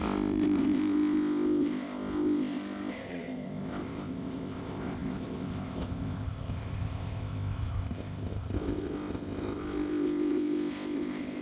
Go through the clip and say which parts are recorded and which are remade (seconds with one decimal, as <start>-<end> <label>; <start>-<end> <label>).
0.0-11.4 remade